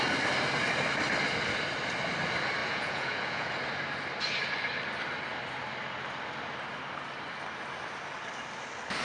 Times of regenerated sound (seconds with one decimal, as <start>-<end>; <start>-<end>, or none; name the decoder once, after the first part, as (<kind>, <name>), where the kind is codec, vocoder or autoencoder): 2.6-3.5 (vocoder, Vocos)